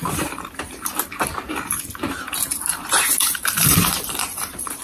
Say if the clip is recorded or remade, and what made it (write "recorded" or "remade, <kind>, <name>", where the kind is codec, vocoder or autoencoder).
remade, vocoder, BigVGAN v2